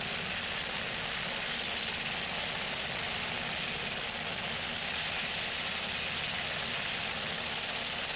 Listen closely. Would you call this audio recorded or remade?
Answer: recorded